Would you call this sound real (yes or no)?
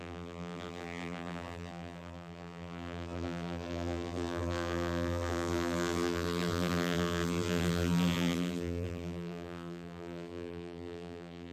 no